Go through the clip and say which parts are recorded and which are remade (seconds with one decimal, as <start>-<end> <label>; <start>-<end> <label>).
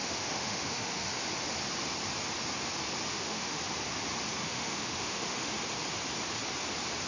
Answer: 0.0-1.1 remade; 1.1-3.1 recorded; 3.1-3.6 remade; 3.6-4.4 recorded; 4.4-5.5 remade; 5.5-7.1 recorded